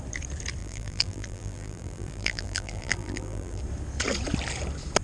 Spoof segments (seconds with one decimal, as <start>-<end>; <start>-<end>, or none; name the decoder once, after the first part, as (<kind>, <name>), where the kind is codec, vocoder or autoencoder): 0.6-3.6 (vocoder, BigVGAN v2)